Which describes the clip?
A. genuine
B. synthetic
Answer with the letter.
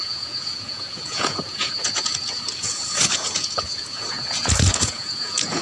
B